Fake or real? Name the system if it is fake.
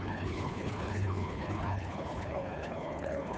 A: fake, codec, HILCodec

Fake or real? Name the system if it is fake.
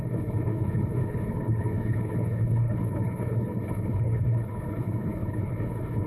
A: fake, codec, HILCodec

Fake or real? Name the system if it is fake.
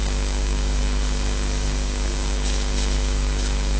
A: fake, codec, DAC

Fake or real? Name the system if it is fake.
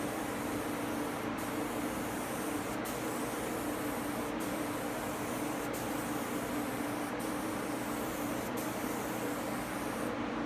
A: real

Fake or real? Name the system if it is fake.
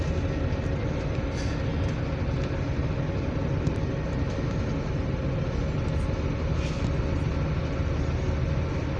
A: real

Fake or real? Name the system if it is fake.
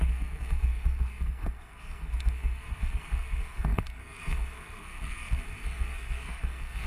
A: fake, codec, SNAC